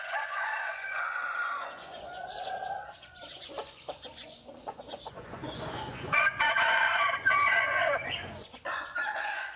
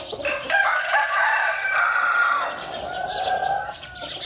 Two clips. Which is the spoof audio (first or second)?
first